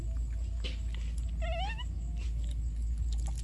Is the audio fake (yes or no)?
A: no